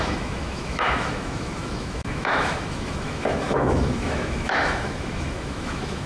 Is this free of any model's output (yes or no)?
no